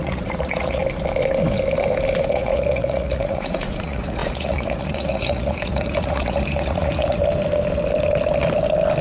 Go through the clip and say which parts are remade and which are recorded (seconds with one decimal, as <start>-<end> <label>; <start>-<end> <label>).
0.0-0.8 remade; 0.8-2.3 recorded; 2.3-7.2 remade; 7.2-9.0 recorded